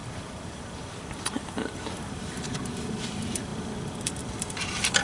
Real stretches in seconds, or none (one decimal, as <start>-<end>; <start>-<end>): none